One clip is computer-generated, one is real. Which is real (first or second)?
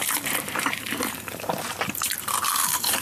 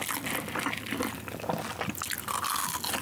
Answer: second